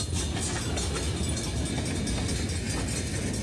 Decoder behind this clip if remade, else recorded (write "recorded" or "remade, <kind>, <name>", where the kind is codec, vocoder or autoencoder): recorded